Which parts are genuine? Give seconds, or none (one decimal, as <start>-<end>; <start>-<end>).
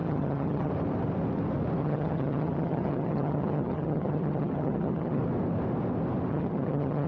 0.7-1.8; 5.2-6.3